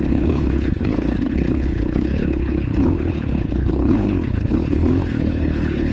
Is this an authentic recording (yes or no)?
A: no